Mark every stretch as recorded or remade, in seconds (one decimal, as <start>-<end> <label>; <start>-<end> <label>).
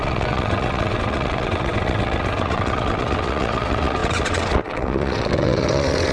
0.0-6.1 remade